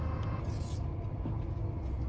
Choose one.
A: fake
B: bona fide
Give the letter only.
B